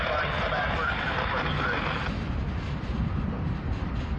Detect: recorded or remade recorded